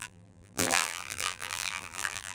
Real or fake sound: fake